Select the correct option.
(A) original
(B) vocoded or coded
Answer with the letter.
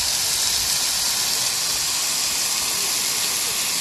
A